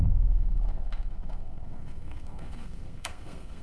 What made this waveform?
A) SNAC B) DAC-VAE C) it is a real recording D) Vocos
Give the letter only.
A